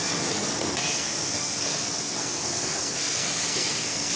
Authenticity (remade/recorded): remade